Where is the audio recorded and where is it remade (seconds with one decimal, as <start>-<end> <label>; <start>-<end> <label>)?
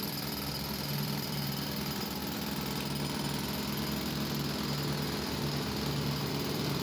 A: 0.0-2.2 remade; 2.2-6.3 recorded; 6.3-6.8 remade